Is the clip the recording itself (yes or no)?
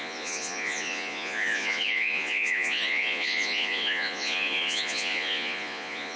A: no